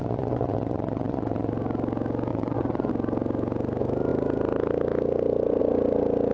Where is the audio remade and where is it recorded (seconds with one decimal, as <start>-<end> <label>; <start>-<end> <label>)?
0.0-1.5 remade; 1.5-2.3 recorded; 2.3-2.9 remade; 2.9-6.3 recorded